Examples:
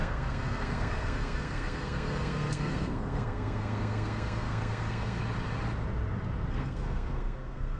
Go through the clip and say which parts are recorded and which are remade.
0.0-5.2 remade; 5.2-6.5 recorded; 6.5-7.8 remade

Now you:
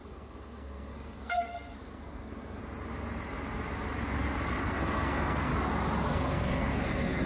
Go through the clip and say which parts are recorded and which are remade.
0.0-2.6 remade; 2.6-4.6 recorded; 4.6-5.5 remade; 5.5-6.1 recorded; 6.1-7.3 remade

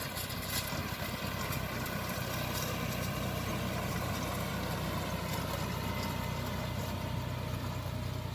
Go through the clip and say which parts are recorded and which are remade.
0.0-8.3 recorded

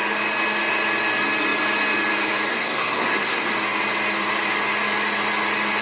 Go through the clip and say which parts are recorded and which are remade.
0.0-2.5 recorded; 2.5-3.5 remade; 3.5-5.8 recorded

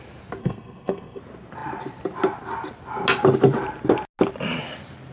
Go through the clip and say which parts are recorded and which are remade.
0.0-0.4 recorded; 0.4-1.2 remade; 1.2-5.1 recorded

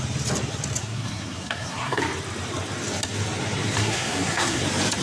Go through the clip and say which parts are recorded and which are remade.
0.0-0.8 recorded; 0.8-2.0 remade; 2.0-3.8 recorded; 3.8-4.6 remade; 4.6-5.0 recorded

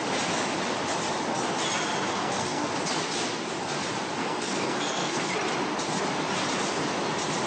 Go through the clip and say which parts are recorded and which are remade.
0.0-2.1 recorded; 2.1-2.7 remade; 2.7-4.2 recorded; 4.2-5.3 remade; 5.3-7.5 recorded

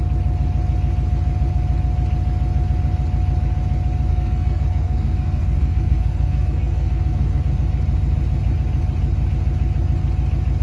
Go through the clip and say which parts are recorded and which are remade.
0.0-4.1 recorded; 4.1-7.4 remade; 7.4-10.6 recorded